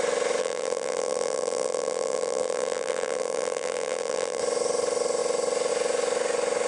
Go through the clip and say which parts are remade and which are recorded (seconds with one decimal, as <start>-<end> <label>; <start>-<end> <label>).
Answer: 0.0-0.4 recorded; 0.4-4.4 remade; 4.4-6.7 recorded